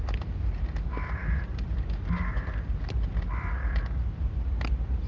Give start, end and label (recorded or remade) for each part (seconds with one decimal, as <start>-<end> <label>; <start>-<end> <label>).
0.0-5.1 recorded